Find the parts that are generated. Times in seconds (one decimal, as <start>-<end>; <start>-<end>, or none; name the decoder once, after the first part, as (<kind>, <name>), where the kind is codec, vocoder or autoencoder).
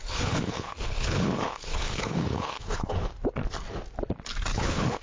0.0-3.0 (codec, HILCodec); 4.5-5.0